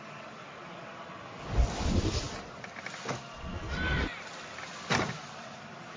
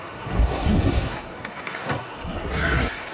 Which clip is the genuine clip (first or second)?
first